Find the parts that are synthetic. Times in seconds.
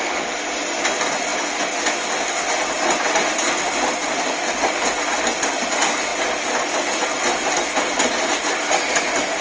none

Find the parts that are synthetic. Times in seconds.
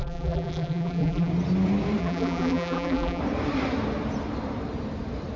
0.0-1.3 (vocoder, BigVGAN v2); 2.0-3.2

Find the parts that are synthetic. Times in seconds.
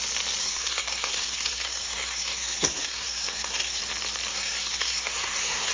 0.4-3.8 (codec, SNAC); 4.3-5.7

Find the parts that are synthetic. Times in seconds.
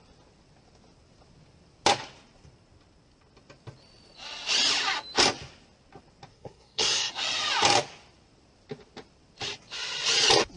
6.3-7.1 (codec, SNAC)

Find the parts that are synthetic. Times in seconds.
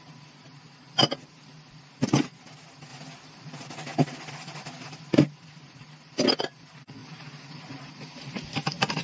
7.0-9.0 (vocoder, BigVGAN v2)